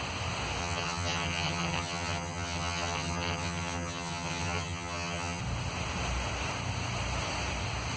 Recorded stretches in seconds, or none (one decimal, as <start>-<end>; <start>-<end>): 0.0-0.6; 5.4-8.0

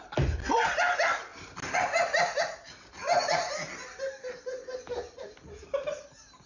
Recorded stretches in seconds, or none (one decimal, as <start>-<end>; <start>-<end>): 0.0-6.5

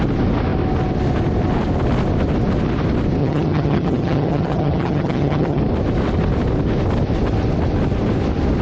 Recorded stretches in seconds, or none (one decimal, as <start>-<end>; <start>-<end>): 0.0-3.2; 5.6-8.6

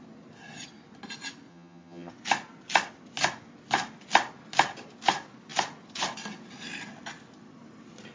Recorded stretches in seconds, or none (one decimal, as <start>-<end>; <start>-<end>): 0.0-1.5; 2.1-8.1

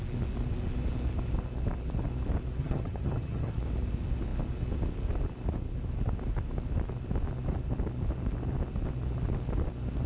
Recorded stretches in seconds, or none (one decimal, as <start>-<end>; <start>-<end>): 0.0-2.6; 3.6-10.1